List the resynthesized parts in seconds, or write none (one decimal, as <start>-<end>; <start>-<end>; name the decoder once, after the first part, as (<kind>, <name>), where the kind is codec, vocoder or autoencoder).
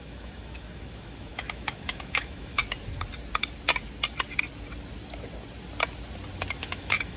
0.0-2.6 (autoencoder, DAC-VAE); 6.6-7.2